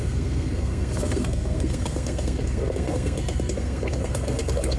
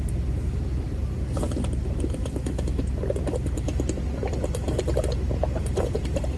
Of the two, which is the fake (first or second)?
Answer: first